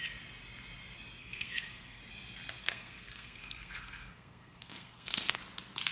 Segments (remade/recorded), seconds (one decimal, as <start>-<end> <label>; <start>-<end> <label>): 0.0-1.2 recorded; 1.2-2.0 remade; 2.0-2.6 recorded; 2.6-5.4 remade; 5.4-5.9 recorded